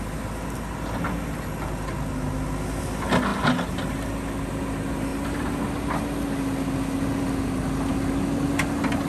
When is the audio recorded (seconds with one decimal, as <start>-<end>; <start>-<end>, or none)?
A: 0.0-9.1